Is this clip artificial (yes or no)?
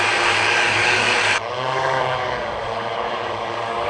yes